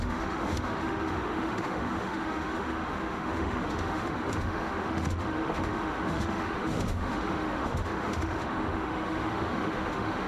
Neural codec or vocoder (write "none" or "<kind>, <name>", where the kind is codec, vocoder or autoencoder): autoencoder, DAC-VAE